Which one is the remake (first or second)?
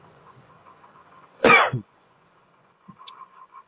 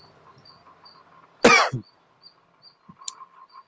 first